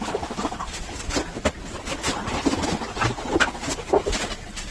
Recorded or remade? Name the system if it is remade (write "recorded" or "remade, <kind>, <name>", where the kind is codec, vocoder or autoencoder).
recorded